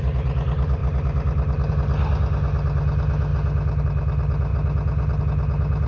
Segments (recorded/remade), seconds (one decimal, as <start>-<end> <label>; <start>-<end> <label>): 0.0-5.9 recorded